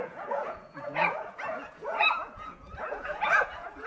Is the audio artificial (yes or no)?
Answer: yes